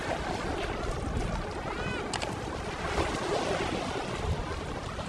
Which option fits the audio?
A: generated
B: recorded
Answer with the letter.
B